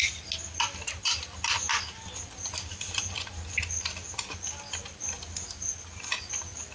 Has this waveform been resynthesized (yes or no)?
no